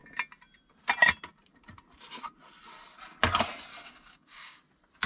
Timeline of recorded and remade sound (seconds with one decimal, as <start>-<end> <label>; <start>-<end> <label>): 0.0-3.7 recorded; 3.7-4.6 remade; 4.6-5.1 recorded